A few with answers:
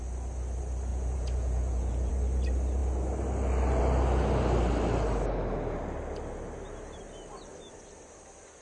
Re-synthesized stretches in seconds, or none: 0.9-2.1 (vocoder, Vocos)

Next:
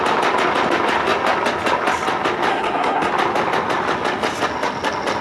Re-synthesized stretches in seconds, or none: 2.5-3.1 (codec, SNAC)

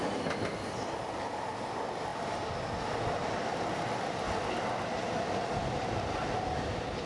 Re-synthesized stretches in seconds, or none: none

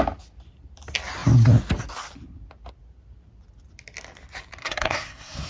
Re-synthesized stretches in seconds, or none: 4.6-5.5 (codec, SNAC)

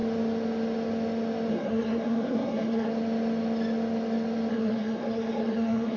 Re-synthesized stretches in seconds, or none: 1.5-2.9 (codec, SNAC); 4.5-6.0

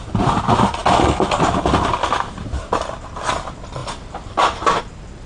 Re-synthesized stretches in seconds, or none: none

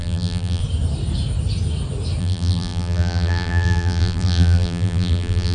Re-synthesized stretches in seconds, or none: 0.0-0.6 (vocoder, BigVGAN v2); 2.2-5.5

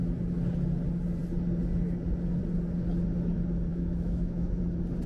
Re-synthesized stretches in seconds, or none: 3.7-4.6 (autoencoder, DAC-VAE)